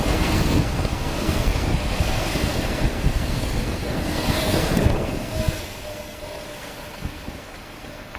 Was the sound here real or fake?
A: fake